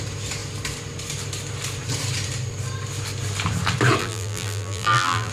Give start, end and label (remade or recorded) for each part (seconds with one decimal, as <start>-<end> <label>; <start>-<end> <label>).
0.0-4.0 recorded; 4.0-5.3 remade